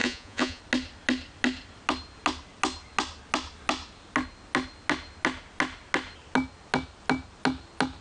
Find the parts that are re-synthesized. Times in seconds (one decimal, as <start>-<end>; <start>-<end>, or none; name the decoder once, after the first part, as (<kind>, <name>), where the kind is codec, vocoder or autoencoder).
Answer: 0.0-0.6 (vocoder, Vocos)